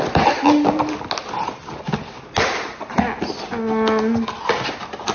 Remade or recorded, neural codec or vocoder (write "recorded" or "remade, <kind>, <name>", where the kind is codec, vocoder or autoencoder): recorded